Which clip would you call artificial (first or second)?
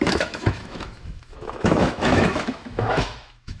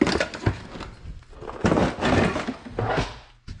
first